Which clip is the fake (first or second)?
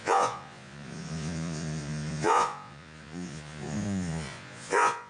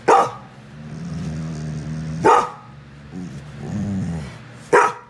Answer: first